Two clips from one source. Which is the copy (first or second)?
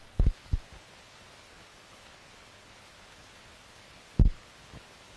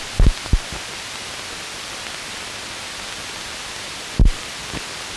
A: first